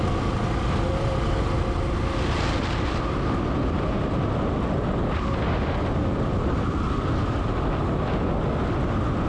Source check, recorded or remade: recorded